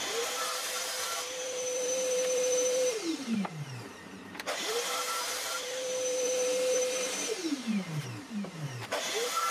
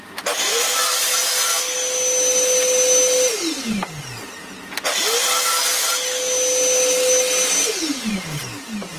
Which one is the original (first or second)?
second